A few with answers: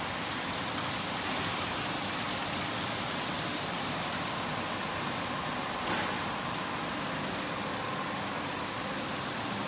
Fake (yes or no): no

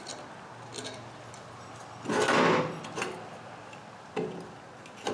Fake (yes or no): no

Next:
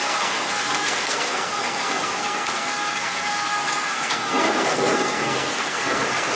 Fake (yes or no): yes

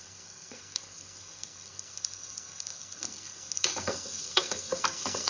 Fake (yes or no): yes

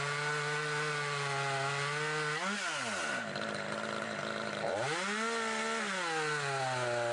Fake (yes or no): no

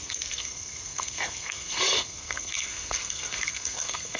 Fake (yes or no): yes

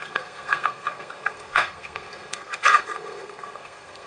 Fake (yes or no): yes